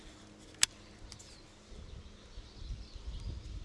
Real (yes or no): yes